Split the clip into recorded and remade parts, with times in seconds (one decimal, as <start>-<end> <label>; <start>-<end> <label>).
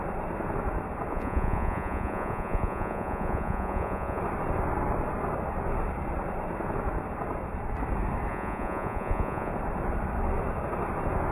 0.0-1.1 recorded; 1.1-4.2 remade; 4.2-8.3 recorded; 8.3-9.5 remade; 9.5-11.3 recorded